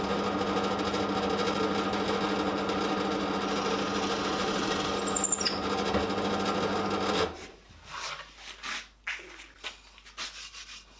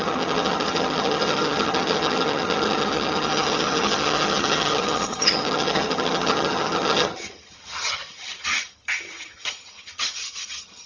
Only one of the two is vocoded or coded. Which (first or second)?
second